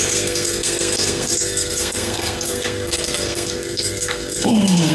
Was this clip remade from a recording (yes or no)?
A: yes